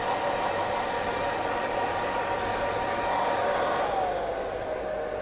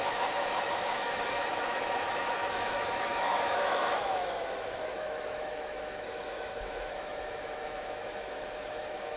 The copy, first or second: second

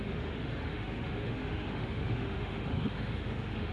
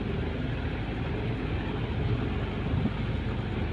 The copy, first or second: first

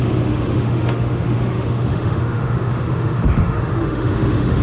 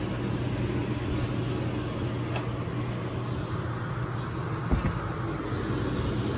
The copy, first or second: first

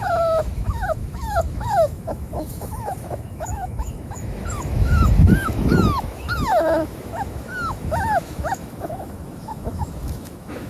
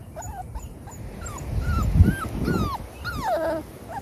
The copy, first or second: first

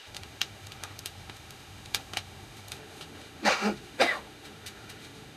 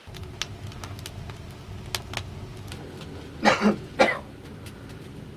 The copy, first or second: first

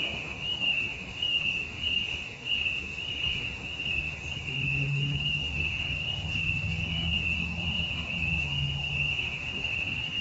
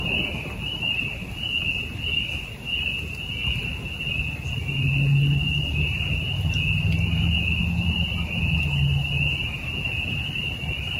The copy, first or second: first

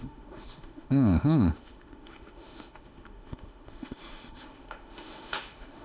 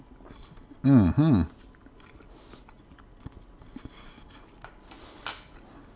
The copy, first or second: first